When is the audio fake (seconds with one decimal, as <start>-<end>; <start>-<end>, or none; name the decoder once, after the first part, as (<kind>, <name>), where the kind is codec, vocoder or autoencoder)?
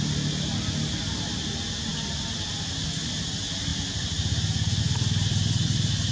none